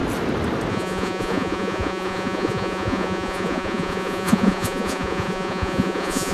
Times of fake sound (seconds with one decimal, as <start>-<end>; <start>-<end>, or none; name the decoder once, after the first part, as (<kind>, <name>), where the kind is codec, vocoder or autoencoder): 0.7-6.3 (vocoder, Vocos)